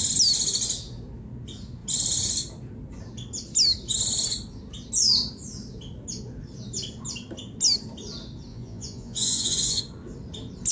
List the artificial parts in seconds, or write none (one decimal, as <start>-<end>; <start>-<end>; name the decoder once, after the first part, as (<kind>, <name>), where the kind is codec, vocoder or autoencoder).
8.5-9.8 (vocoder, Vocos)